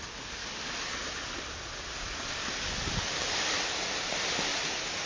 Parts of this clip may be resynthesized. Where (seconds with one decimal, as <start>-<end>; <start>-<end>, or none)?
none